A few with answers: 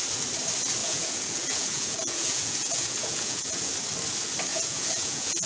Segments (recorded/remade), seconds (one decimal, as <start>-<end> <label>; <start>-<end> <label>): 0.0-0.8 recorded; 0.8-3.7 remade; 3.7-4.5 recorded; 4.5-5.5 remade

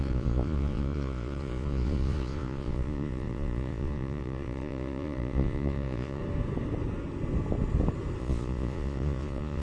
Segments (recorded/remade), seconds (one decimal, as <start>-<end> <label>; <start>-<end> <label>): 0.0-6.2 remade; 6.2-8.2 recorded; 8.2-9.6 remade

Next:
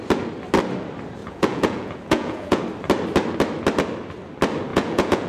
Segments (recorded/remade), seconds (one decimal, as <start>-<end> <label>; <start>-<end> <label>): 0.0-1.2 recorded; 1.2-2.6 remade; 2.6-4.7 recorded; 4.7-5.3 remade

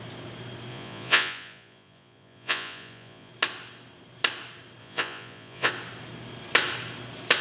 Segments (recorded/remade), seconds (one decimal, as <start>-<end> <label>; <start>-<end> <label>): 0.0-0.7 recorded; 0.7-3.3 remade; 3.3-4.8 recorded; 4.8-5.7 remade; 5.7-7.4 recorded